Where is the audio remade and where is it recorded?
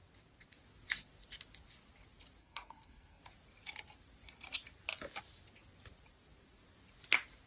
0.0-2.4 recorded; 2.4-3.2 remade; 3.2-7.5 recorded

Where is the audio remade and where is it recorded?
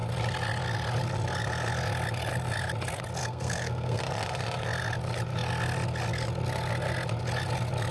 0.0-3.2 recorded; 3.2-4.0 remade; 4.0-7.9 recorded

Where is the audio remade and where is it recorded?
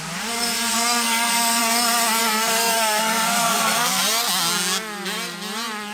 0.0-0.7 recorded; 0.7-1.6 remade; 1.6-2.2 recorded; 2.2-4.0 remade; 4.0-5.9 recorded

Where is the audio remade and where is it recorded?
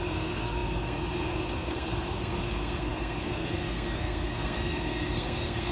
0.0-5.7 remade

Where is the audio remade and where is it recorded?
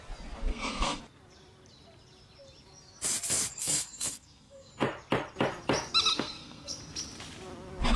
0.0-0.5 recorded; 0.5-1.0 remade; 1.0-3.6 recorded; 3.6-4.7 remade; 4.7-6.1 recorded; 6.1-6.8 remade; 6.8-8.0 recorded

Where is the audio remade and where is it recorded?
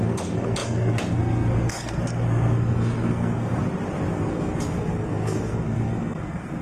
0.0-3.6 remade; 3.6-4.1 recorded; 4.1-6.6 remade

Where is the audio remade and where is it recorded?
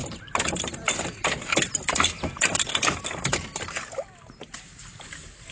0.0-5.5 recorded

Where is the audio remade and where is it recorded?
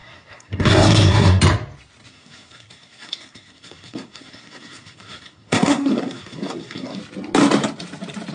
0.0-1.4 remade; 1.4-2.1 recorded; 2.1-7.0 remade; 7.0-8.3 recorded